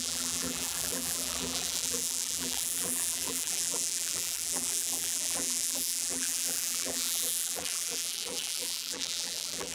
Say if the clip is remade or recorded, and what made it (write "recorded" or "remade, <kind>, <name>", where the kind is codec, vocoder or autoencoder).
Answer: remade, vocoder, BigVGAN v2